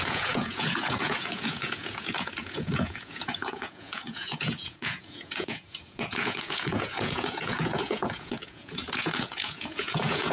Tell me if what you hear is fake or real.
fake